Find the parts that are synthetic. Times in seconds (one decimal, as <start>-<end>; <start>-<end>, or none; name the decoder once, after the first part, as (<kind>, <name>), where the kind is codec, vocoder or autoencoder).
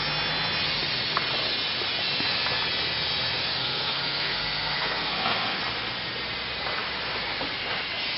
3.5-5.6 (codec, SNAC)